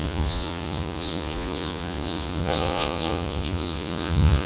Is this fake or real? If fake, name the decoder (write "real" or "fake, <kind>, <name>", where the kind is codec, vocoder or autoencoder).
fake, vocoder, Vocos